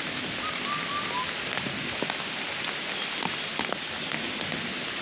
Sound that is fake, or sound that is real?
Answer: real